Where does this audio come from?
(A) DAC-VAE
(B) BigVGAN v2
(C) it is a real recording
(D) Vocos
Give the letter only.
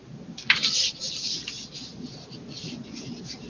C